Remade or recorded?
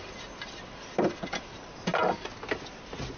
recorded